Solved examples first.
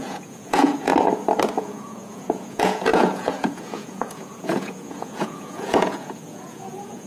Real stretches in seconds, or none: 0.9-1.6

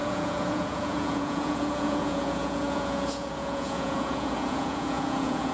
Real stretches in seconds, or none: none